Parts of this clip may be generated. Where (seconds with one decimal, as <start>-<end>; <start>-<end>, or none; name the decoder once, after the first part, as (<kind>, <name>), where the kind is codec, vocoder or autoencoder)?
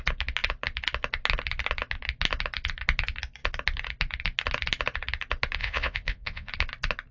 5.6-6.5 (vocoder, Vocos)